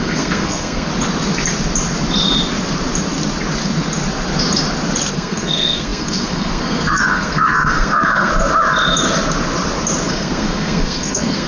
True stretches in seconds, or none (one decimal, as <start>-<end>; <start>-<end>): 0.9-5.1; 8.3-10.1